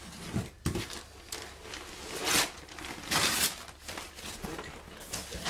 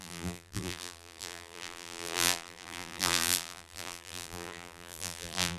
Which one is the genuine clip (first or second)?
first